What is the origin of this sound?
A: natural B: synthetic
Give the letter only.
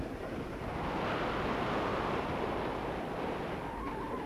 A